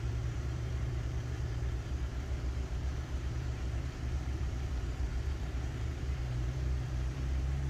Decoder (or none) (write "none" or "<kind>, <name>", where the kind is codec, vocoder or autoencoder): vocoder, BigVGAN v2